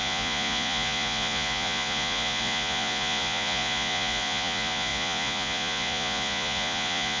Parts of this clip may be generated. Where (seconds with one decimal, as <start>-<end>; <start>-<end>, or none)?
0.0-7.2